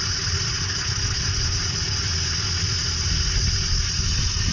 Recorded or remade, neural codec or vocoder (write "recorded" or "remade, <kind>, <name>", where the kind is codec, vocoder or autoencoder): recorded